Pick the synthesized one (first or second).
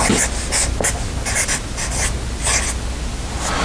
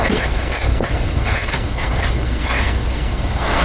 second